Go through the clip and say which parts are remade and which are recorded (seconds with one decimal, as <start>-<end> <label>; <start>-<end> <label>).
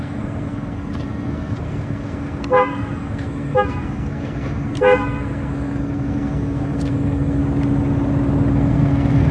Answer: 0.0-7.4 remade; 7.4-8.5 recorded; 8.5-9.3 remade